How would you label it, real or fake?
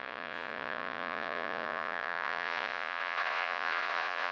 fake